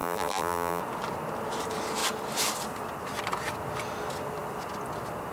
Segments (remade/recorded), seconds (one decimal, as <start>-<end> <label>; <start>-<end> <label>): 0.0-0.8 remade; 0.8-5.3 recorded